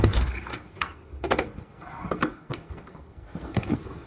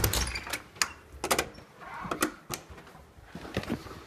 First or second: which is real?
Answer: second